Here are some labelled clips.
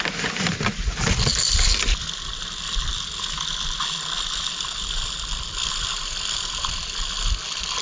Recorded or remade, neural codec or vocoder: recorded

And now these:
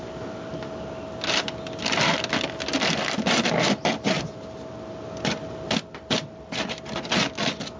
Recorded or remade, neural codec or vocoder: recorded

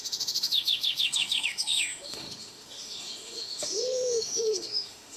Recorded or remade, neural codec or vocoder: remade, autoencoder, DAC-VAE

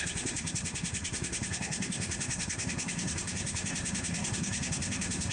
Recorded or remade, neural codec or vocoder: remade, codec, SNAC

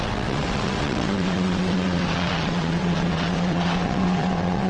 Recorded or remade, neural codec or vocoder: remade, vocoder, WaveNeXt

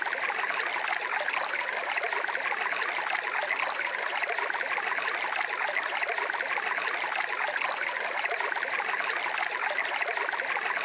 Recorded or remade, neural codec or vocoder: recorded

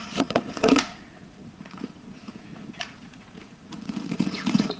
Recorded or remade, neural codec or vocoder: remade, vocoder, Vocos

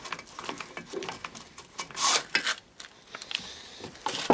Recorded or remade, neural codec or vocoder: recorded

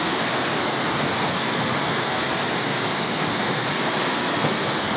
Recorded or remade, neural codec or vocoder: remade, codec, SNAC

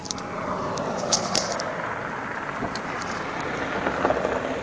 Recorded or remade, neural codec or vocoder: recorded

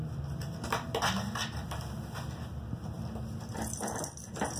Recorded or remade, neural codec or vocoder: recorded